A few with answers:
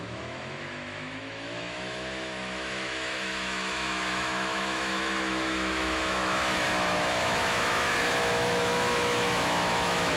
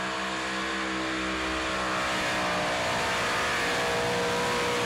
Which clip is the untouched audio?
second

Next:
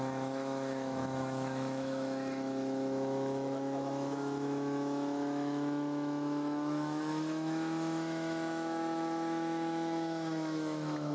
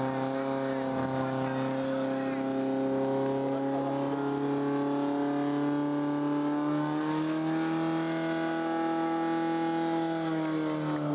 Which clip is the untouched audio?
second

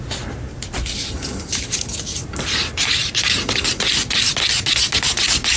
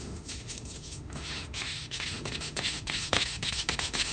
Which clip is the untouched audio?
first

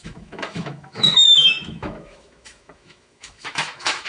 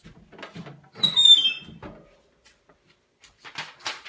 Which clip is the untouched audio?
second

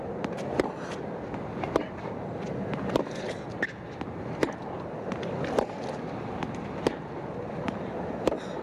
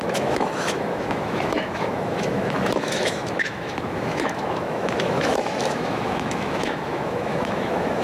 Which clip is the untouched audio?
first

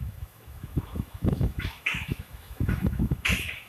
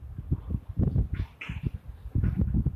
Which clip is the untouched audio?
second